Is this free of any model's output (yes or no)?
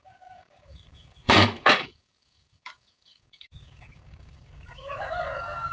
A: no